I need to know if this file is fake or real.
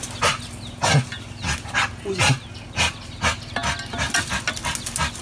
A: real